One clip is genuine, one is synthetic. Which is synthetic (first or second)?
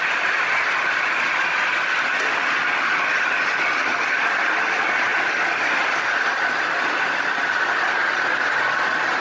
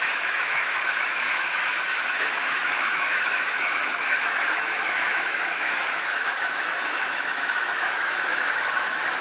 second